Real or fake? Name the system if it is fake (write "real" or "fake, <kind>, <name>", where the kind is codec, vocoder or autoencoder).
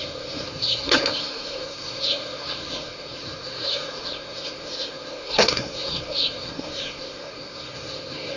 fake, codec, SNAC